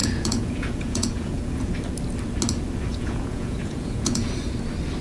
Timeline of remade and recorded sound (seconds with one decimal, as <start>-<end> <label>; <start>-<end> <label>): 0.0-1.7 remade; 1.7-2.9 recorded; 2.9-4.3 remade; 4.3-5.0 recorded